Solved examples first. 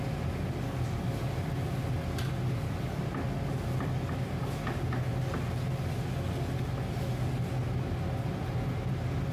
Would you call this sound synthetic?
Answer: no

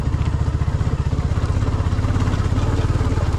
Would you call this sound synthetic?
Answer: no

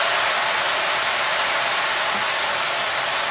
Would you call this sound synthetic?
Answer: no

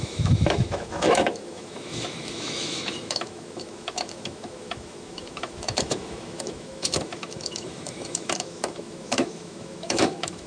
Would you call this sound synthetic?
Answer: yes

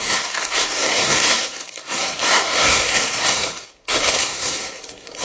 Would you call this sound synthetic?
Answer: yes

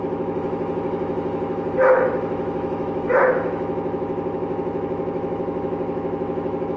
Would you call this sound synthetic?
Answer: yes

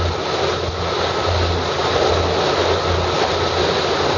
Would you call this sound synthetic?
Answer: no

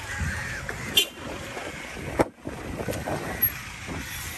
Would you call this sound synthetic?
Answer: no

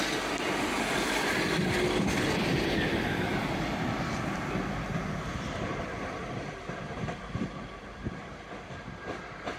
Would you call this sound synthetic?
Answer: no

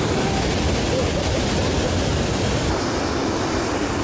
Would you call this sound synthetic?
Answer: yes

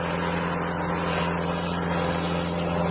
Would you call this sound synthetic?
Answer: no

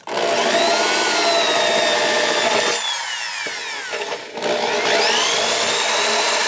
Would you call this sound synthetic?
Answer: no